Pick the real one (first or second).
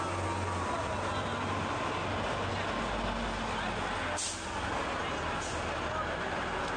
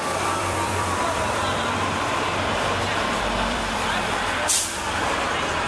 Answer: first